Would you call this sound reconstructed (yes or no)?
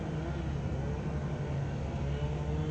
no